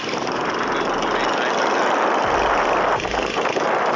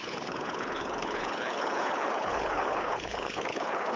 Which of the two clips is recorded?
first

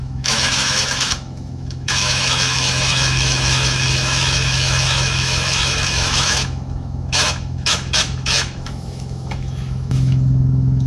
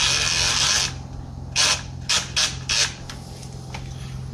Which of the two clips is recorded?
second